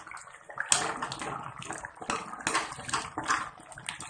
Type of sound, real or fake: real